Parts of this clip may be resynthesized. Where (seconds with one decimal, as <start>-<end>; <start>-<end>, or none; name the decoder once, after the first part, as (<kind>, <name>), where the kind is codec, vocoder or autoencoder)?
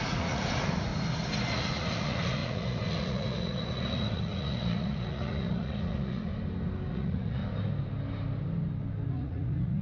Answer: 0.0-0.9 (vocoder, Vocos); 1.5-6.3; 6.9-7.4; 9.1-9.8